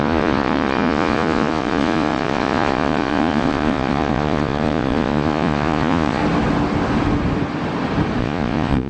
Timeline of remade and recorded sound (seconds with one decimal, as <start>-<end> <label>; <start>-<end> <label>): 0.0-6.2 remade; 6.2-8.2 recorded; 8.2-8.9 remade